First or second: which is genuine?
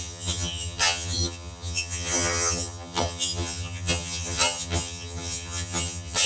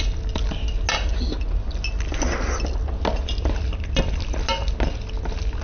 second